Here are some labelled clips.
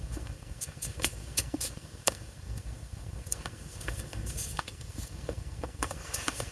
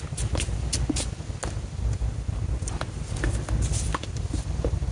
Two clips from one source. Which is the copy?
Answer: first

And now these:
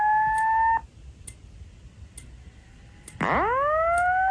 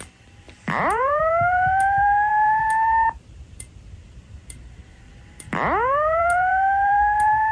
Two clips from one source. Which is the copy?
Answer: second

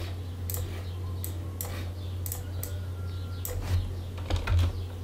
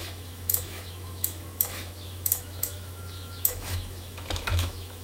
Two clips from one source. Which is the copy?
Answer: second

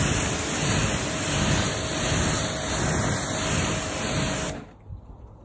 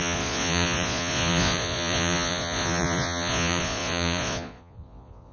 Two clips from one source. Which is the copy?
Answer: second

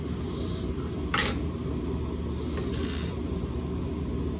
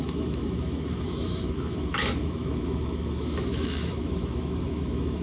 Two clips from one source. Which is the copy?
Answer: second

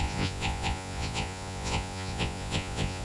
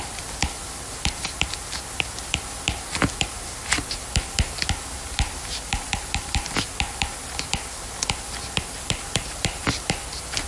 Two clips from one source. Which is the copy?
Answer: first